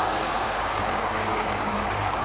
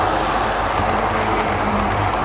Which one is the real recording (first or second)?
second